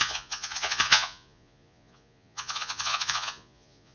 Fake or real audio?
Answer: fake